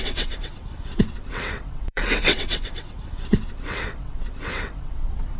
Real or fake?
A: fake